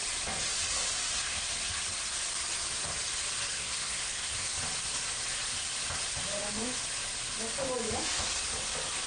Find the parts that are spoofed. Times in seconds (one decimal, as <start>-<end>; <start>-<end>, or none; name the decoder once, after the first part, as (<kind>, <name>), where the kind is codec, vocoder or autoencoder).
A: 3.5-4.5 (codec, SNAC)